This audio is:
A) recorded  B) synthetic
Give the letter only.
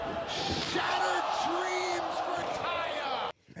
B